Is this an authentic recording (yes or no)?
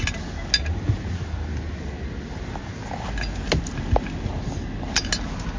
yes